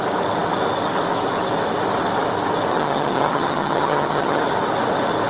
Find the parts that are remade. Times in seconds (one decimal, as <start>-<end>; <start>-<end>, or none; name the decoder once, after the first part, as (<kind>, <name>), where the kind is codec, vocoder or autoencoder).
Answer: 2.7-4.4 (vocoder, HiFi-GAN)